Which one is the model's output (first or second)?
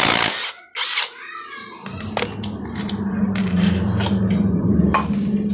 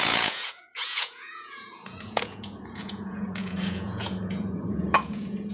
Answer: second